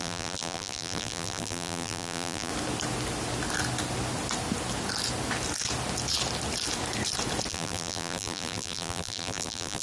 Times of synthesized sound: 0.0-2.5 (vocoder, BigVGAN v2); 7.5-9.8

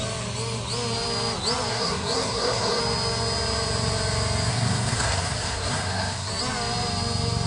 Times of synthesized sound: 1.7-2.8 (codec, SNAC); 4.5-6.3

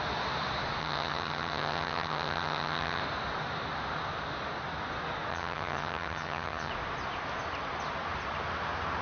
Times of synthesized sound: 0.8-3.0 (vocoder, HiFi-GAN); 5.3-6.7

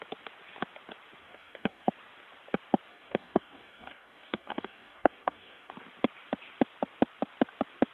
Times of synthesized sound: 1.2-1.9 (codec, DAC); 2.9-5.7

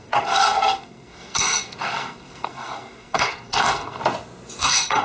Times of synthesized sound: 0.0-4.0 (codec, SNAC); 4.6-5.0